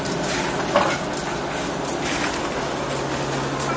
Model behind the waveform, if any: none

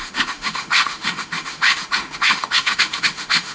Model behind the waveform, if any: autoencoder, DAC-VAE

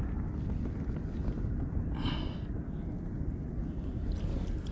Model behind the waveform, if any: none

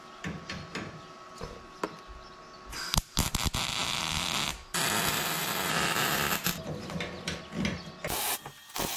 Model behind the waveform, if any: none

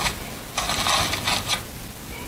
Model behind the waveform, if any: none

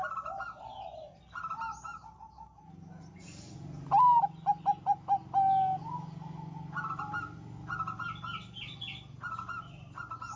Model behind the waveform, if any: none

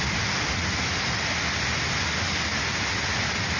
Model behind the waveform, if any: none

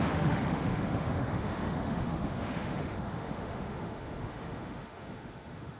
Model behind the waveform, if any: autoencoder, DAC-VAE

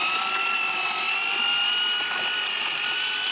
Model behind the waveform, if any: none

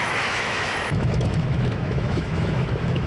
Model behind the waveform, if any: autoencoder, DAC-VAE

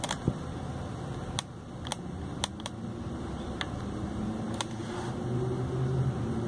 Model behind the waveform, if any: none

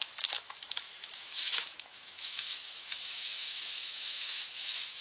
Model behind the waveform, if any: autoencoder, DAC-VAE